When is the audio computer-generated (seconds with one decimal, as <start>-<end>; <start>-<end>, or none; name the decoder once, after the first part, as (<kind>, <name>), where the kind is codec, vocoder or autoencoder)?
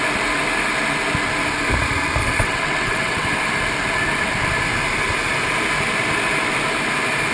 2.2-3.3 (vocoder, WaveNeXt)